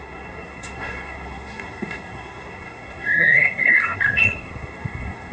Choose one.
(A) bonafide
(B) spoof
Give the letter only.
B